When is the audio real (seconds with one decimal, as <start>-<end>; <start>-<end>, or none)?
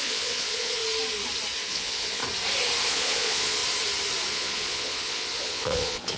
0.8-1.7; 2.2-2.9; 3.6-4.3